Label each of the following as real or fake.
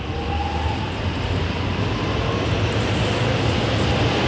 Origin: real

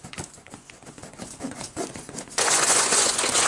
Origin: fake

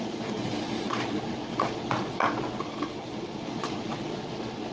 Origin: fake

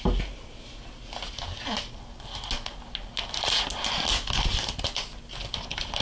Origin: real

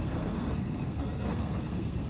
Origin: fake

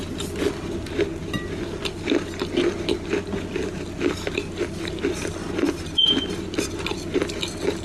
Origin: real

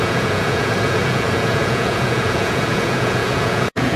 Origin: fake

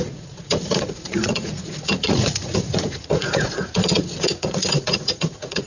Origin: fake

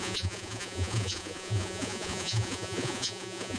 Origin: fake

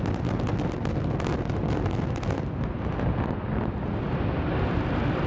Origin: real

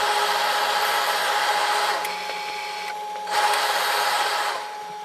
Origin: real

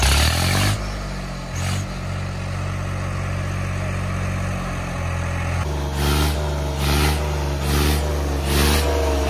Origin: real